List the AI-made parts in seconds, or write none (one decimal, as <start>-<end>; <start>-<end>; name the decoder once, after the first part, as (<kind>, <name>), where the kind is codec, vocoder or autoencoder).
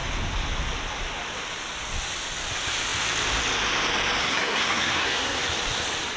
4.2-5.4 (codec, SNAC)